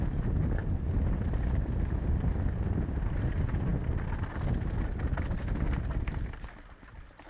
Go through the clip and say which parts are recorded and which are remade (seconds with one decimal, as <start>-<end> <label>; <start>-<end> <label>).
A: 0.0-0.6 recorded; 0.6-2.3 remade; 2.3-7.3 recorded